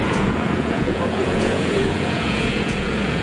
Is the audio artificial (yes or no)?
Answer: yes